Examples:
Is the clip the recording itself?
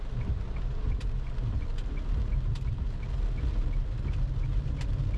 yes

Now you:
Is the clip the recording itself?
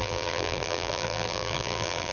no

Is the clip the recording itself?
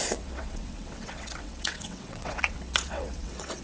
no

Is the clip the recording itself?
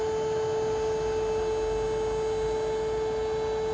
yes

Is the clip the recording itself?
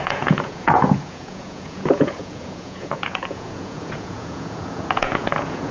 no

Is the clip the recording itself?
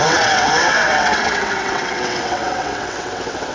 no